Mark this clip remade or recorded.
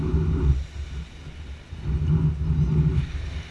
recorded